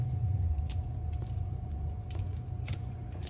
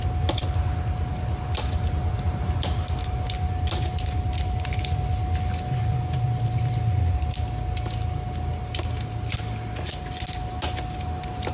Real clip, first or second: second